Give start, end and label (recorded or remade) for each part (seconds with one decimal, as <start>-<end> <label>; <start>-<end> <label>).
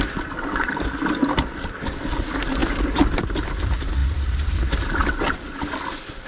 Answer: 0.0-4.0 recorded; 4.0-5.0 remade; 5.0-6.3 recorded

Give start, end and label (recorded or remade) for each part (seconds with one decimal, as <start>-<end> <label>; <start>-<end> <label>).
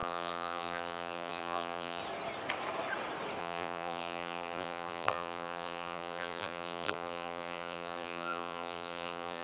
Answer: 0.0-2.0 remade; 2.0-3.4 recorded; 3.4-9.4 remade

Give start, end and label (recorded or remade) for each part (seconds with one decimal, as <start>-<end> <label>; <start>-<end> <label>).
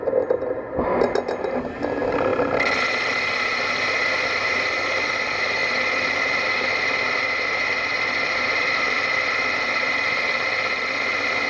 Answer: 0.0-2.3 recorded; 2.3-3.1 remade; 3.1-5.6 recorded; 5.6-9.1 remade; 9.1-11.5 recorded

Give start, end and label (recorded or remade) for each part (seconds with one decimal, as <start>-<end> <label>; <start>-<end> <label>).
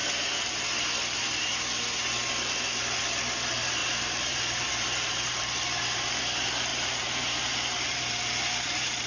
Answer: 0.0-3.8 recorded; 3.8-6.0 remade; 6.0-6.7 recorded; 6.7-9.1 remade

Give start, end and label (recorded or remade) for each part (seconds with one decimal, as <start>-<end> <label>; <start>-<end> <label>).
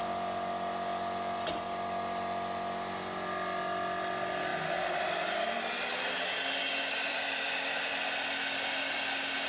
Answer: 0.0-4.5 recorded; 4.5-6.1 remade; 6.1-7.1 recorded; 7.1-7.9 remade; 7.9-9.5 recorded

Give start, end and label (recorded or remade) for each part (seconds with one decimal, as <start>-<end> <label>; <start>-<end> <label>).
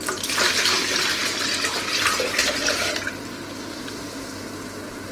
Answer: 0.0-1.2 remade; 1.2-1.7 recorded; 1.7-2.4 remade; 2.4-5.1 recorded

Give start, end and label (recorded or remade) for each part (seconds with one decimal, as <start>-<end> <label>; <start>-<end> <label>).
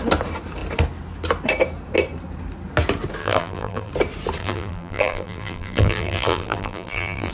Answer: 0.0-3.2 recorded; 3.2-3.9 remade; 3.9-4.4 recorded; 4.4-7.3 remade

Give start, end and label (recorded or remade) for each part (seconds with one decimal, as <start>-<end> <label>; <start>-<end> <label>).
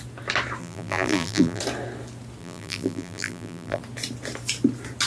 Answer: 0.0-0.6 recorded; 0.6-1.6 remade; 1.6-2.4 recorded; 2.4-3.8 remade; 3.8-5.1 recorded